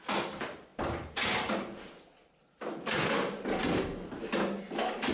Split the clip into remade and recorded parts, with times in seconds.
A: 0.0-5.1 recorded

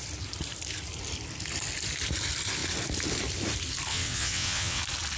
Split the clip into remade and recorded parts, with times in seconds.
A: 0.0-3.9 recorded; 3.9-4.8 remade; 4.8-5.2 recorded